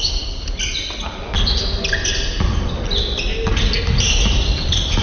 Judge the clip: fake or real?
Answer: real